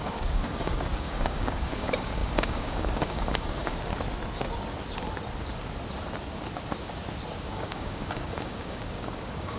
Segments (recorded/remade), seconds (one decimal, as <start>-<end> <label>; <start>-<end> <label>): 0.0-3.9 remade; 3.9-7.4 recorded; 7.4-9.6 remade